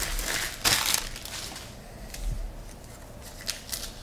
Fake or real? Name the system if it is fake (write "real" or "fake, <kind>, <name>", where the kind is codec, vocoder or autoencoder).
real